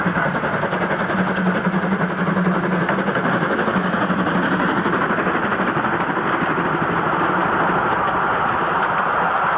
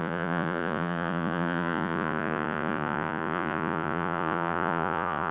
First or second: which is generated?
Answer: second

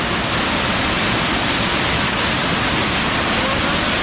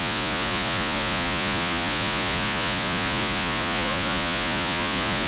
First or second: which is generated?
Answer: second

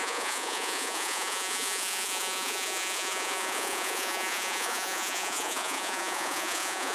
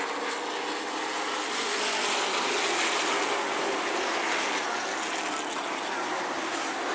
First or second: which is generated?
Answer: first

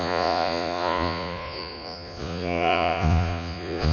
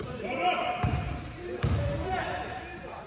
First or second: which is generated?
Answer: first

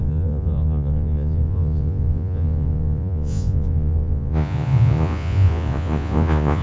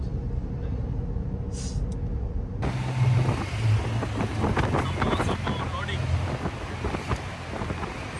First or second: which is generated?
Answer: first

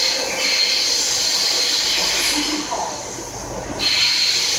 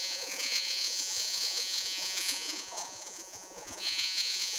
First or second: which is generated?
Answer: second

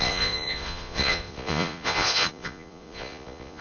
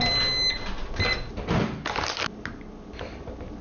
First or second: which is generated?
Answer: first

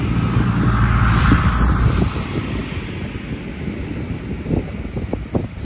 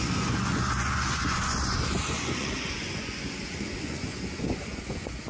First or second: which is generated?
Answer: second